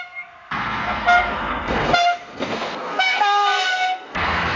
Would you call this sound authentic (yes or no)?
no